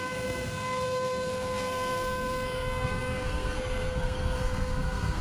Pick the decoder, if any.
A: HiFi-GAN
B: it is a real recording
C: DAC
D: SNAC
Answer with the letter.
D